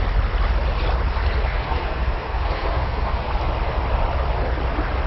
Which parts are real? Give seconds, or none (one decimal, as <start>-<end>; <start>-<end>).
0.0-1.4; 3.3-5.1